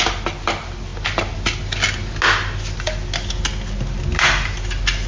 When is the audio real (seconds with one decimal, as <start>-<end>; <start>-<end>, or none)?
0.0-5.1